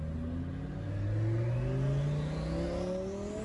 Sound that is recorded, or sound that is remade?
recorded